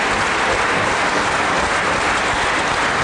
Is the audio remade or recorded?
recorded